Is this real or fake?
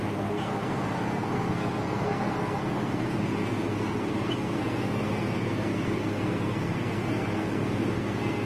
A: fake